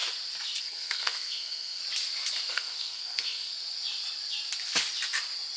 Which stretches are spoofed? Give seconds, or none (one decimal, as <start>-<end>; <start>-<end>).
0.6-1.8; 2.5-3.5